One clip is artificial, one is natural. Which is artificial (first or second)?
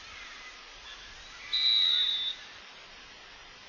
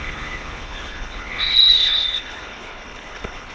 second